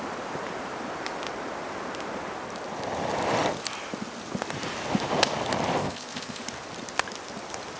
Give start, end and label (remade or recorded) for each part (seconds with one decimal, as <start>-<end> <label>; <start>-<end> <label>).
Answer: 0.0-5.8 recorded; 5.8-6.4 remade; 6.4-7.8 recorded